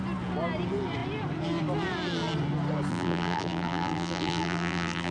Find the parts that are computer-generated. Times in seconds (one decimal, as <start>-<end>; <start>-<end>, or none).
2.9-5.1